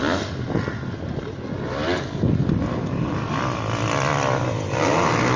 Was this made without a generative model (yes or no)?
yes